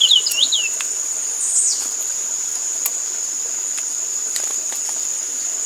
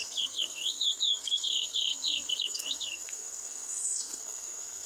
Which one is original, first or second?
first